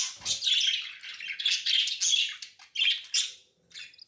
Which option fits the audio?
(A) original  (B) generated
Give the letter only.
A